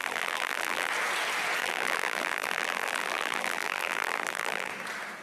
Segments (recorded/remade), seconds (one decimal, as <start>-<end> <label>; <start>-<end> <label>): 0.0-0.9 remade; 0.9-1.6 recorded; 1.6-4.7 remade; 4.7-5.2 recorded